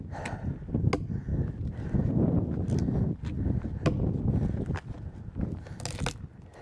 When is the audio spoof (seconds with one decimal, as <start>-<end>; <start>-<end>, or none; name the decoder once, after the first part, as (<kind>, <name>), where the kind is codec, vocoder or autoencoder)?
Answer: none